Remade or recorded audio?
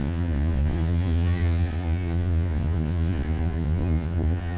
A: remade